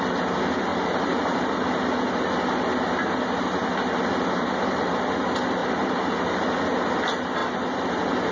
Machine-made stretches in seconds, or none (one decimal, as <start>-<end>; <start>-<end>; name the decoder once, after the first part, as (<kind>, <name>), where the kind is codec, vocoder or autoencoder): 0.7-1.4 (vocoder, BigVGAN v2); 3.6-4.9; 5.6-6.1; 7.4-7.9